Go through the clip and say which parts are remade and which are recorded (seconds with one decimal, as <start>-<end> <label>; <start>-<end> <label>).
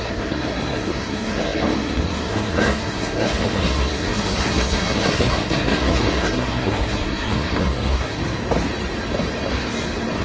0.0-8.2 remade; 8.2-10.2 recorded